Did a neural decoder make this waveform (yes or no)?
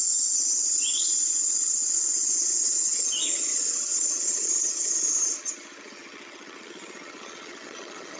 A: yes